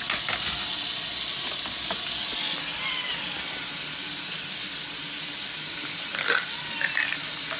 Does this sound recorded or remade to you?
recorded